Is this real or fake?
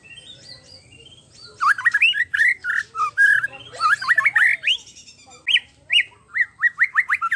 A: real